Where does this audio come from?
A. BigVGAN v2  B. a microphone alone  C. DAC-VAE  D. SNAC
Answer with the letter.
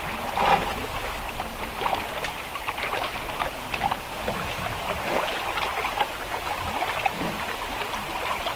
B